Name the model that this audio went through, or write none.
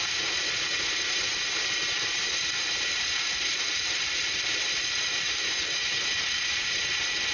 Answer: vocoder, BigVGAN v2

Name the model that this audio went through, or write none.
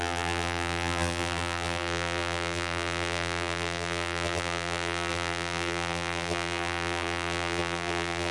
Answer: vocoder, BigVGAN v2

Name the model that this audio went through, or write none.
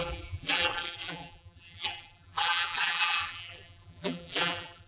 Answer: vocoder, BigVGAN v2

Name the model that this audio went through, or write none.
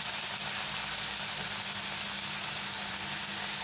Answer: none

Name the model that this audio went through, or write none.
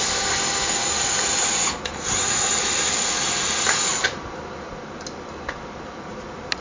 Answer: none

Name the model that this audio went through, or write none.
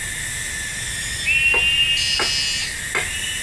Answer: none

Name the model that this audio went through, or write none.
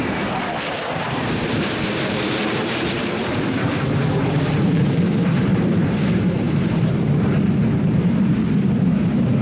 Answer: vocoder, BigVGAN v2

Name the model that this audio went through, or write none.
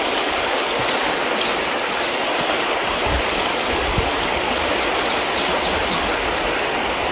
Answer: none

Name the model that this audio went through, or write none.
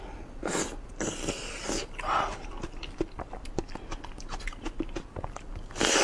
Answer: vocoder, BigVGAN v2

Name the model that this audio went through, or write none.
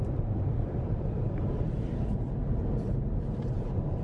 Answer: vocoder, BigVGAN v2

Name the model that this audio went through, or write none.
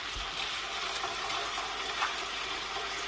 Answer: vocoder, BigVGAN v2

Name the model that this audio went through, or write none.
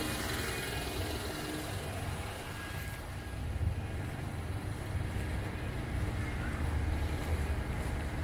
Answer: none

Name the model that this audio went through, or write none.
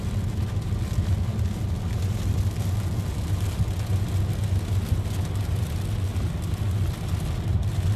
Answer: none